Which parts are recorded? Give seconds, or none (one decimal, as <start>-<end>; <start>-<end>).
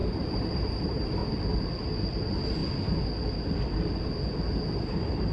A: 1.2-2.1; 2.6-4.7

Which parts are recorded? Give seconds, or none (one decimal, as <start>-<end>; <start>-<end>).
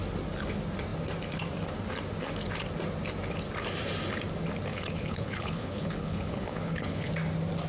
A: 0.0-4.7; 7.1-7.7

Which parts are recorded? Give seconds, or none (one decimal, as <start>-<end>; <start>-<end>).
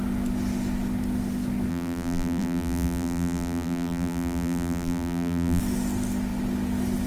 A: 0.0-1.7; 5.6-7.1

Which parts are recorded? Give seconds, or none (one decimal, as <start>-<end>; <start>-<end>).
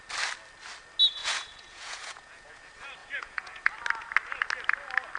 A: 0.0-1.2; 2.6-3.0; 3.7-5.2